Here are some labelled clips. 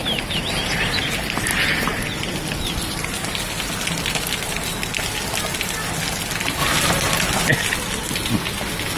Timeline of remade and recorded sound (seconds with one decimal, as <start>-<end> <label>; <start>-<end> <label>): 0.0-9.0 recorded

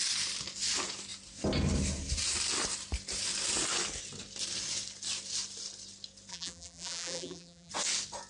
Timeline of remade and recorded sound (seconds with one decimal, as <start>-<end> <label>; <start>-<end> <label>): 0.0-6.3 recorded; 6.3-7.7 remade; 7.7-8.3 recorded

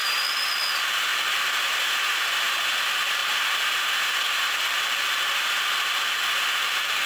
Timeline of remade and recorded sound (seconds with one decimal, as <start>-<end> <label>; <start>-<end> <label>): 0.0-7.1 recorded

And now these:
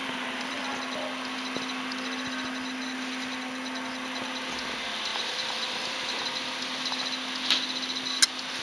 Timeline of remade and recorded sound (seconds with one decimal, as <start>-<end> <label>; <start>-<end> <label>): 0.0-0.7 remade; 0.7-5.1 recorded; 5.1-6.2 remade; 6.2-8.6 recorded